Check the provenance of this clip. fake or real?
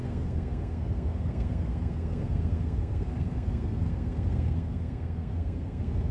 fake